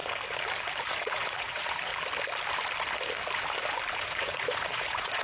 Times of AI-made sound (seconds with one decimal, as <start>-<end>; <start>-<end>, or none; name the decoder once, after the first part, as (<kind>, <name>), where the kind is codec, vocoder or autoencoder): 0.9-1.9 (vocoder, Vocos); 4.0-5.2